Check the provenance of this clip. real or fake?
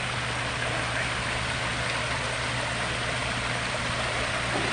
real